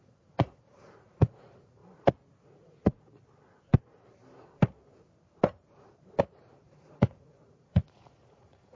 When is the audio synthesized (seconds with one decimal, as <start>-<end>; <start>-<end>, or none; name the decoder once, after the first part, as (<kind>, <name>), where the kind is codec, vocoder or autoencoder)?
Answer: 0.0-1.8 (vocoder, Vocos); 2.4-3.1; 6.2-8.8